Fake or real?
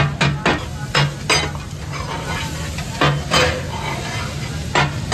real